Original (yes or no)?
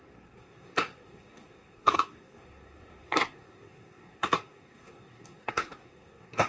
no